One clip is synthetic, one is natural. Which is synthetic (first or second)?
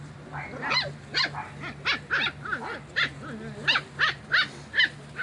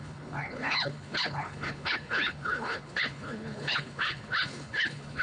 second